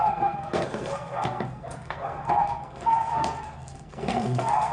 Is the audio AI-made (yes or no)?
yes